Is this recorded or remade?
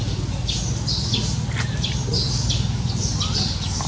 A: recorded